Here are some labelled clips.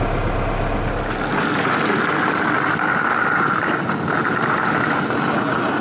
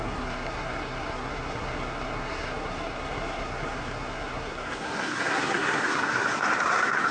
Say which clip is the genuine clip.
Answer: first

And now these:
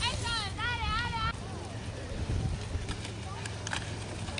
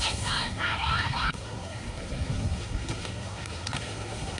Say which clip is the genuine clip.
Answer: first